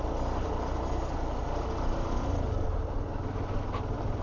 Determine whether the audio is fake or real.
real